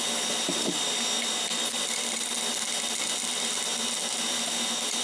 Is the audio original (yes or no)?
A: yes